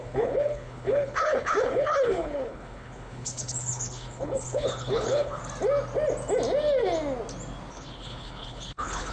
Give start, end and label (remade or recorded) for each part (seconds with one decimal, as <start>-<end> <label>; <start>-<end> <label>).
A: 0.0-5.4 remade; 5.4-7.7 recorded; 7.7-9.1 remade

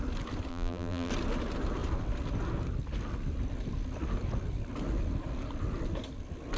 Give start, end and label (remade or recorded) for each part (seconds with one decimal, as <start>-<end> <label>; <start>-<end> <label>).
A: 0.0-0.5 recorded; 0.5-1.1 remade; 1.1-6.6 recorded

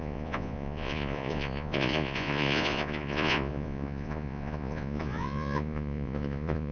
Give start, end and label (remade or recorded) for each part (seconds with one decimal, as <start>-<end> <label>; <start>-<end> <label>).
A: 0.0-6.7 remade

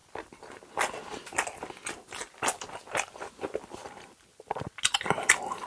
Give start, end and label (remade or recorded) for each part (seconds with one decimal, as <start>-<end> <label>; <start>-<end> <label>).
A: 0.0-5.7 recorded

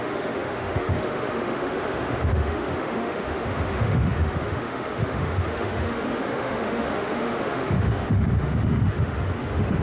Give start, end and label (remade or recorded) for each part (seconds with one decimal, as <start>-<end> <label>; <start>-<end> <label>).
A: 0.0-9.8 remade